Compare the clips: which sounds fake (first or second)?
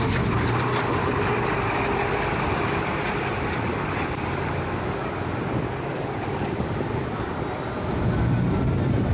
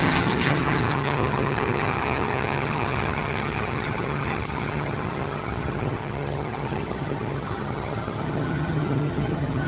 second